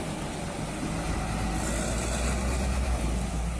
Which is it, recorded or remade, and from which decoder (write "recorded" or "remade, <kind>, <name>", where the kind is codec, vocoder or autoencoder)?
recorded